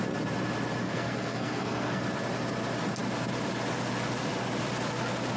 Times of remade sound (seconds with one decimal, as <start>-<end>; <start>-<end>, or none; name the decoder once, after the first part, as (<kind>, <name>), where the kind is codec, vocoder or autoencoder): 0.8-2.0 (codec, SNAC)